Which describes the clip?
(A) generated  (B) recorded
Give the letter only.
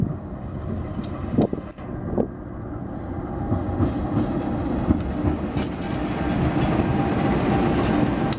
B